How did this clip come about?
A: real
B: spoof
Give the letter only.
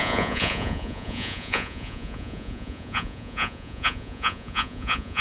B